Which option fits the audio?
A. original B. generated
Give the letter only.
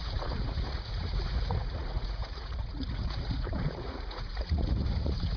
B